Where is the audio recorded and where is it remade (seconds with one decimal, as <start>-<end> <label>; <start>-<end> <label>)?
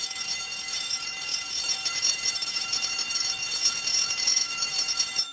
0.0-5.3 remade